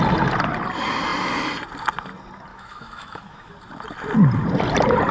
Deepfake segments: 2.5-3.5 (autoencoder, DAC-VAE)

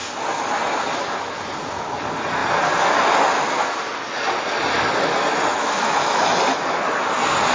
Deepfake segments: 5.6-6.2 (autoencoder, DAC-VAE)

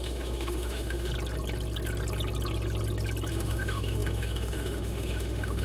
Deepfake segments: 0.0-1.1 (autoencoder, DAC-VAE); 3.3-5.6